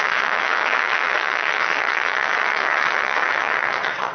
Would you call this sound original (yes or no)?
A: no